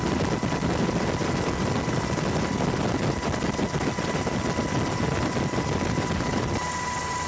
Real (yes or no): yes